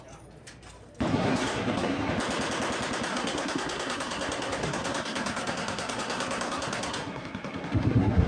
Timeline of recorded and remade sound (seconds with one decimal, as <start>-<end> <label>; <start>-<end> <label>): 0.0-1.1 recorded; 1.1-2.1 remade; 2.1-3.1 recorded; 3.1-8.3 remade